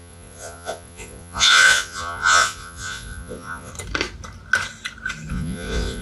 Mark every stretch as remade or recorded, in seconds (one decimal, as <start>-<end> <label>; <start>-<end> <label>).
0.0-3.7 remade; 3.7-5.3 recorded; 5.3-6.0 remade